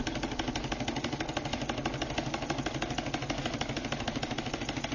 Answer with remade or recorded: recorded